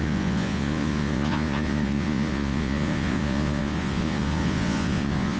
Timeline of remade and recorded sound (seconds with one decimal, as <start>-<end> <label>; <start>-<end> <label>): 0.0-5.4 remade